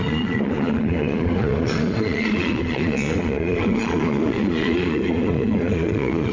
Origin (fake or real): fake